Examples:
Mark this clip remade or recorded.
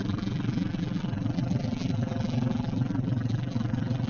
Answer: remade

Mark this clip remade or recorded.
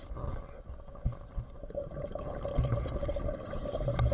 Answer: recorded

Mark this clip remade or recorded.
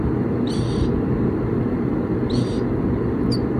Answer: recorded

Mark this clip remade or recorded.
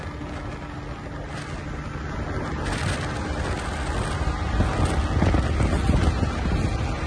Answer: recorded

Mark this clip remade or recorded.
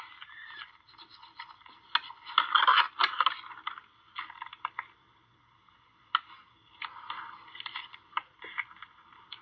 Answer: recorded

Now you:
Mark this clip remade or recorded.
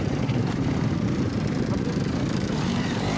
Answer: remade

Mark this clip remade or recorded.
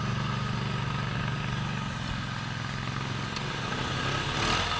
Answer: recorded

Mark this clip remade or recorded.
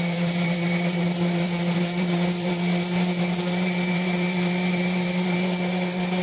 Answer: remade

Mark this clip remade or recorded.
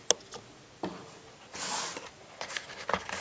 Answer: recorded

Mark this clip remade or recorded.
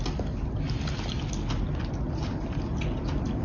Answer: recorded